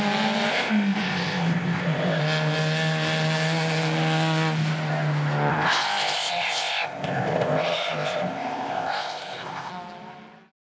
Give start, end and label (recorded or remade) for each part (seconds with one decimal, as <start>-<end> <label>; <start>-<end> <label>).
0.0-0.5 recorded; 0.5-2.2 remade; 2.2-5.5 recorded; 5.5-9.7 remade; 9.7-10.7 recorded